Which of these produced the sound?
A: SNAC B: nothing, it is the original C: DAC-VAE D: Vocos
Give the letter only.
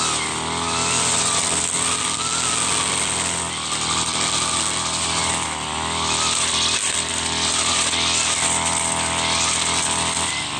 B